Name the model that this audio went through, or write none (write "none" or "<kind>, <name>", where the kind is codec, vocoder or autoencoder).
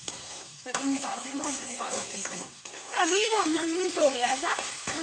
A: codec, SNAC